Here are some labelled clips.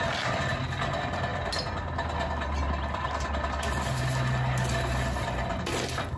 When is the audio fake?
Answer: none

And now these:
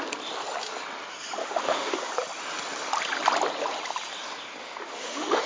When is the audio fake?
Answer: 1.4-2.1 (autoencoder, DAC-VAE); 4.6-5.5

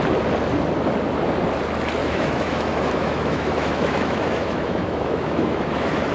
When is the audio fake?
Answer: 2.0-6.1 (autoencoder, DAC-VAE)